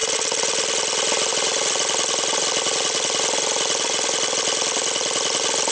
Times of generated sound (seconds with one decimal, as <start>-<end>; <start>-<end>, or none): none